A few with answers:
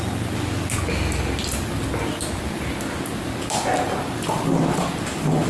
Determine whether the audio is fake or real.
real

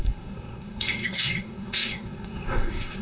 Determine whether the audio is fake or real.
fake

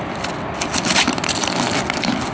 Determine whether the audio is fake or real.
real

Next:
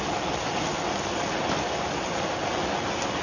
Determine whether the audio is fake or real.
real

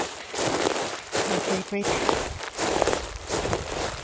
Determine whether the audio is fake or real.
fake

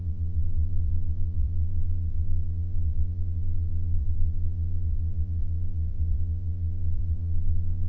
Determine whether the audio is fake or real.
fake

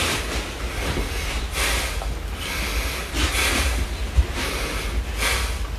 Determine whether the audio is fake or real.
real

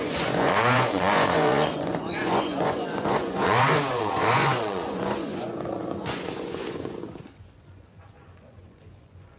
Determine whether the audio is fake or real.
fake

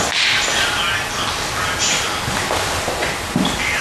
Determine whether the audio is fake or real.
real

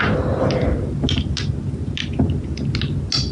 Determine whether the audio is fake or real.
real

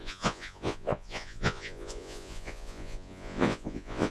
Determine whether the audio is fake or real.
fake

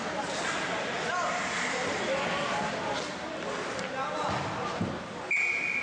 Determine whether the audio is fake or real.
real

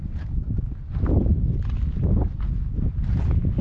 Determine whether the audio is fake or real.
real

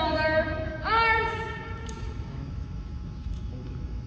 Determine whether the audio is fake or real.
fake